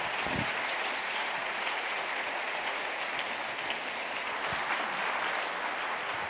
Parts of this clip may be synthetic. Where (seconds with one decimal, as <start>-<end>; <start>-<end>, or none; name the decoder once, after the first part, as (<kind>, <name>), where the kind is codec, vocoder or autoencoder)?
0.0-3.1 (vocoder, Vocos); 5.8-6.3